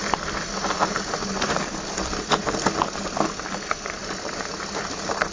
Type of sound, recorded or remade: recorded